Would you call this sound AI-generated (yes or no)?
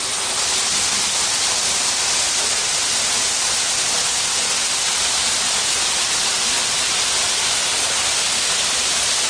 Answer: no